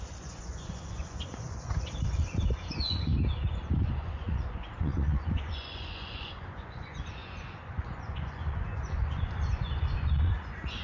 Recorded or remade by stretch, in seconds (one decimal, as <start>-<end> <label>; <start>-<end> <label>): 0.0-3.1 remade; 3.1-3.7 recorded; 3.7-10.8 remade